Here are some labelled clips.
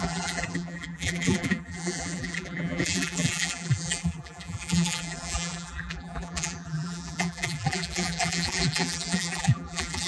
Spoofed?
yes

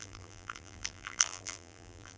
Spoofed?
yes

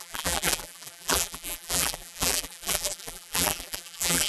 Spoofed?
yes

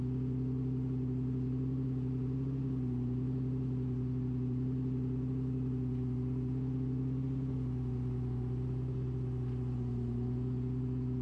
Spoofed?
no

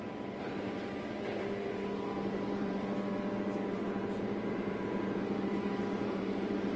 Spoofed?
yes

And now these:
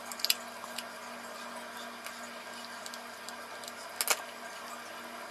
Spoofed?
no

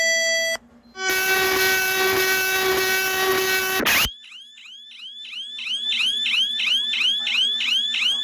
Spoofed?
no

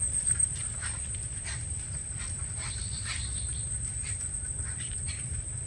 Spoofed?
yes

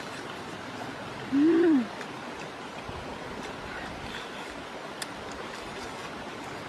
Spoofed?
no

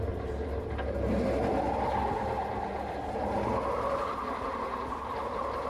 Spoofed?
yes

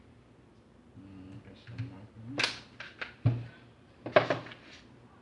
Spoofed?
no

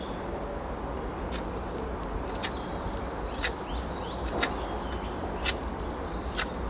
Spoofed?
no